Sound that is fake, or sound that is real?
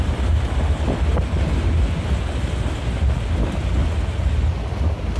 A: real